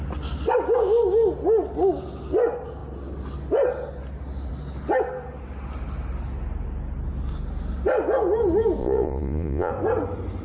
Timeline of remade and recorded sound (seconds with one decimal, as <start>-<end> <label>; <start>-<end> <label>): 0.0-8.8 recorded; 8.8-9.7 remade; 9.7-10.4 recorded